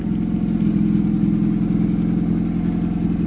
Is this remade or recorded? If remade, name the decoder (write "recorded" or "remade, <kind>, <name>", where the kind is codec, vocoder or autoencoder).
recorded